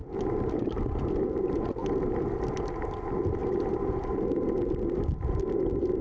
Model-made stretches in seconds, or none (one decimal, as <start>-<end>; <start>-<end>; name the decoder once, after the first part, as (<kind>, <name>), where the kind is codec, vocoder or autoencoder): none